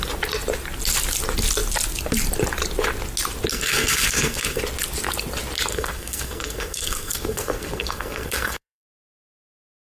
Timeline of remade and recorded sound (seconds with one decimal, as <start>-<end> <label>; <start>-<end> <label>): 0.0-3.5 recorded; 3.5-4.6 remade; 4.6-5.7 recorded; 5.7-9.3 remade; 9.3-9.9 recorded

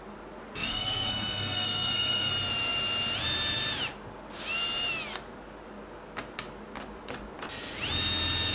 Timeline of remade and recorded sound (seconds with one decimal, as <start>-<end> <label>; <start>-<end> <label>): 0.0-0.5 recorded; 0.5-2.3 remade; 2.3-8.5 recorded

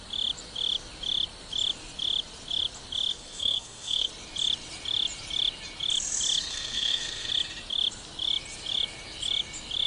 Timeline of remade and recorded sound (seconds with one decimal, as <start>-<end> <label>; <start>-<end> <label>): 0.0-3.1 recorded; 3.1-4.1 remade; 4.1-6.5 recorded; 6.5-7.3 remade; 7.3-9.9 recorded

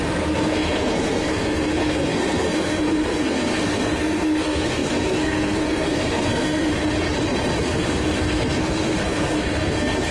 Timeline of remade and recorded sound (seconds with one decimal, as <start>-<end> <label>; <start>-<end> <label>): 0.0-6.7 remade; 6.7-7.6 recorded; 7.6-10.1 remade

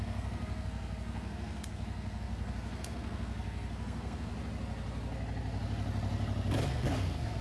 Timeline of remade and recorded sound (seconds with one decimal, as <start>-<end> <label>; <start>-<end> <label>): 0.0-4.3 remade; 4.3-6.7 recorded; 6.7-7.4 remade

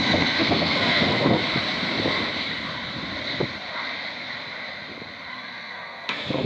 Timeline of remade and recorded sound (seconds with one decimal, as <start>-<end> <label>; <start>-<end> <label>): 0.0-1.4 remade; 1.4-5.3 recorded; 5.3-6.5 remade

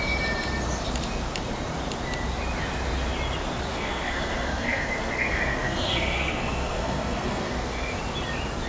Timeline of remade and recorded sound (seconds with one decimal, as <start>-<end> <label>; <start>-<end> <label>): 0.0-3.7 recorded; 3.7-8.0 remade; 8.0-8.7 recorded